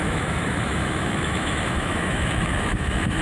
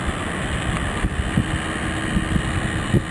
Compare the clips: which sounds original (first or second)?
second